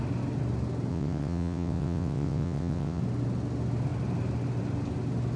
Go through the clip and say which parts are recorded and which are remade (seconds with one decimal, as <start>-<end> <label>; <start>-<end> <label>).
0.0-0.9 recorded; 0.9-3.0 remade; 3.0-5.4 recorded